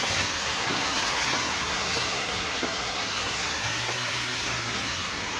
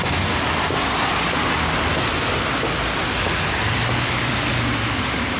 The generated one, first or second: first